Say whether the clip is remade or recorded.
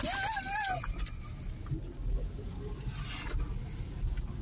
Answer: recorded